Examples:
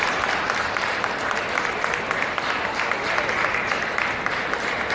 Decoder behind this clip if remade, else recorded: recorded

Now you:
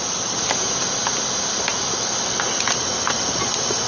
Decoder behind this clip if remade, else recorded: recorded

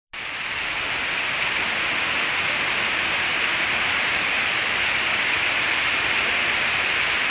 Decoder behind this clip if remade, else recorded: recorded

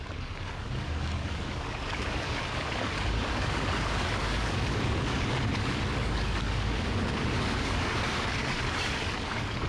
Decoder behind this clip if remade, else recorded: remade, codec, DAC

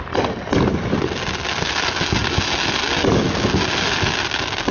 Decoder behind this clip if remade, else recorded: recorded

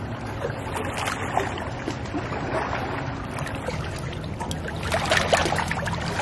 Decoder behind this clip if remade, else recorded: recorded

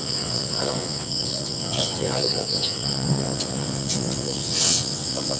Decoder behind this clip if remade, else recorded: remade, vocoder, WaveNeXt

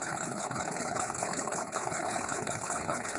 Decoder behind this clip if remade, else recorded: remade, codec, HILCodec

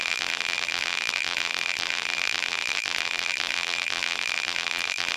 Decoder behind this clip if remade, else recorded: remade, vocoder, BigVGAN v2